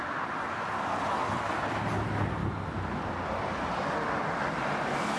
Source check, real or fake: real